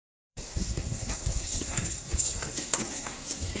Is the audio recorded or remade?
remade